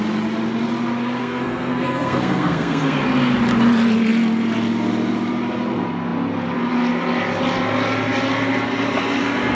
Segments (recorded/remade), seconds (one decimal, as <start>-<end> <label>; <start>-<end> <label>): 0.0-1.2 recorded; 1.2-3.0 remade; 3.0-9.5 recorded